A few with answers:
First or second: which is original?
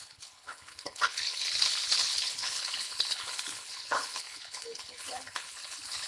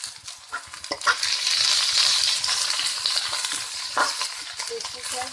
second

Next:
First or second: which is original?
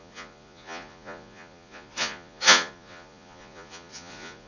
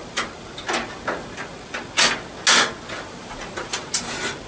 second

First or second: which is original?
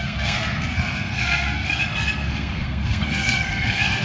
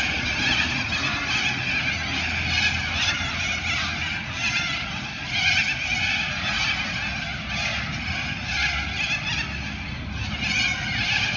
second